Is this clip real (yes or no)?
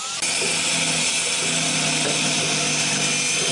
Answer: yes